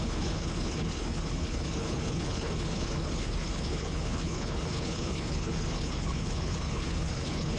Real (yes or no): no